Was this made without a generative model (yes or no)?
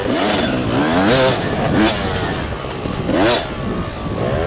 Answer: yes